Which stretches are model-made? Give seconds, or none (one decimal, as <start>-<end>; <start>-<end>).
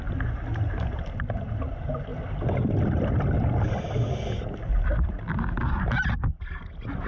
none